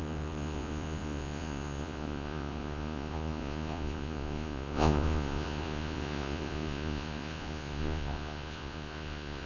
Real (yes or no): no